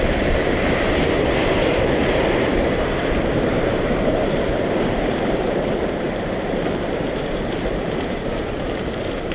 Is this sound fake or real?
fake